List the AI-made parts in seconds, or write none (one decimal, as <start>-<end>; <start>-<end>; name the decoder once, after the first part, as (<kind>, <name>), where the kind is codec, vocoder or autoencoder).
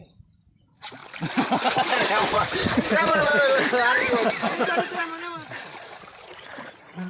0.0-1.0 (vocoder, Vocos); 1.7-3.3; 5.5-7.1